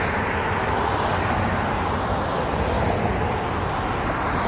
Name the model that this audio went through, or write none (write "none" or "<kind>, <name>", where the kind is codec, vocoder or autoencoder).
none